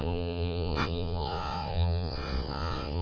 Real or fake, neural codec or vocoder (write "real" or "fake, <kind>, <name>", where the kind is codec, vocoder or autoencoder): fake, vocoder, Vocos